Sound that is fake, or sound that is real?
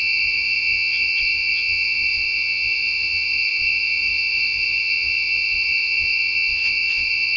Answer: fake